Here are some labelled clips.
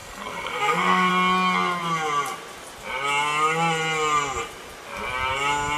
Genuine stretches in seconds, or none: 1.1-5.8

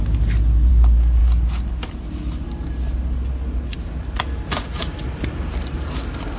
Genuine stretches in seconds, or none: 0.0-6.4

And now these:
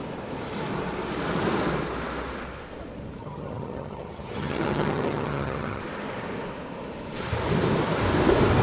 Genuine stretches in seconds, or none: 0.0-3.2; 5.8-8.6

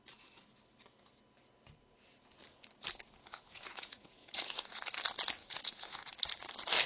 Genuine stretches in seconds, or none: 0.0-3.2; 4.8-5.4; 6.1-6.9

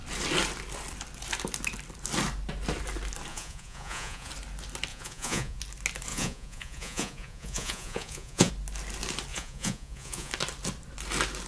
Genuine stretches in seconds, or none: 0.0-3.3; 4.3-4.9; 5.6-6.1; 8.5-9.3; 10.3-11.5